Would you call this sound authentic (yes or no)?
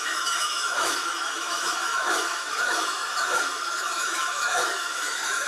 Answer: no